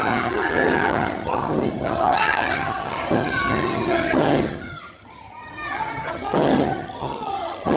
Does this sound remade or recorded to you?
remade